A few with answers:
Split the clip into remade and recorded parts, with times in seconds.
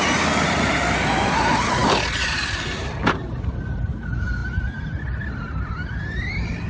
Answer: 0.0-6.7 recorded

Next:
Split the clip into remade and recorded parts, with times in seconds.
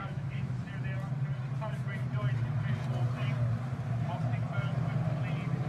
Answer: 0.0-0.5 remade; 0.5-5.7 recorded